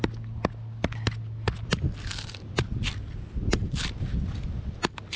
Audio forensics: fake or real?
real